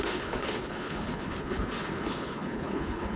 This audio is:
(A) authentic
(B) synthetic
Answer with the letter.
B